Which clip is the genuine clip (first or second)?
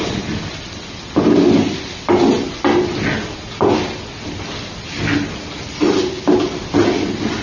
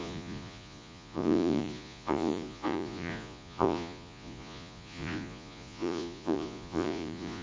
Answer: first